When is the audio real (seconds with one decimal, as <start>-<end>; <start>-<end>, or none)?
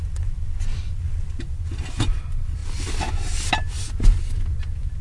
0.0-5.0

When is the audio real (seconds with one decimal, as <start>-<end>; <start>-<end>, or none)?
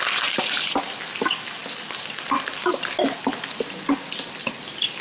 0.0-5.0